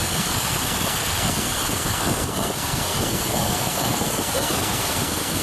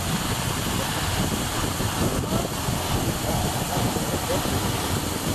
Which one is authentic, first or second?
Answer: second